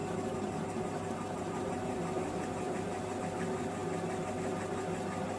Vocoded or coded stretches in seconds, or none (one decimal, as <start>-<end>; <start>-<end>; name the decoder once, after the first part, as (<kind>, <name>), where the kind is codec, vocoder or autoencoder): 0.0-3.2 (vocoder, BigVGAN v2)